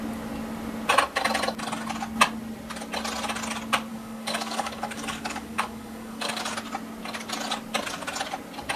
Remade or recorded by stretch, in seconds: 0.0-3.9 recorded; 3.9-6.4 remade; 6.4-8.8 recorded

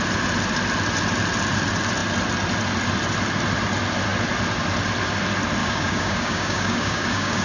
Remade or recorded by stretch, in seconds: 0.0-5.6 recorded; 5.6-7.4 remade

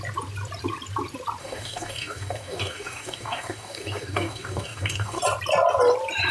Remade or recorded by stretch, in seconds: 0.0-1.4 recorded; 1.4-5.2 remade; 5.2-6.3 recorded

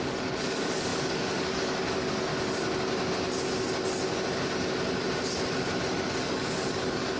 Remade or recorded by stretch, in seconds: 0.0-2.3 remade; 2.3-5.9 recorded; 5.9-7.2 remade